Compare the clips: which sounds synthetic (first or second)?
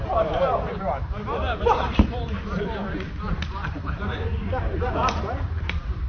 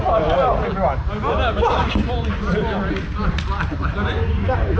first